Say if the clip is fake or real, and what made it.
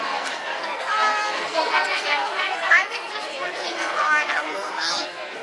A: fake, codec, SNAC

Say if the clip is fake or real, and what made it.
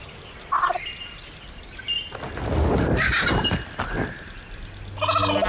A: real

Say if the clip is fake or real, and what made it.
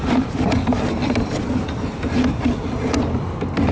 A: real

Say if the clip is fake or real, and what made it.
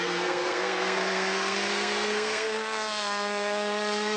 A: fake, codec, SNAC